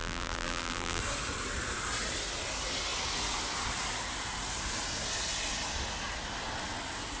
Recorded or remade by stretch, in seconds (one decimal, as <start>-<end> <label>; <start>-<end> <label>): 0.0-1.0 remade; 1.0-7.2 recorded

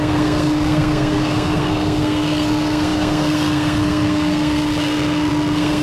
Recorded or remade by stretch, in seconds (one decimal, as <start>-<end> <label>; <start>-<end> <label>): 0.0-5.8 remade